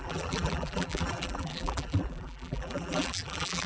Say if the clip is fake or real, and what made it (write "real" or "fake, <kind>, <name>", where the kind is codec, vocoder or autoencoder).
fake, vocoder, BigVGAN v2